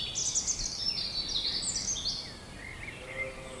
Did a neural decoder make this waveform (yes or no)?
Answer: no